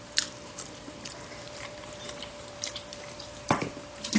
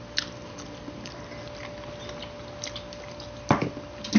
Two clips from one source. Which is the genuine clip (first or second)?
second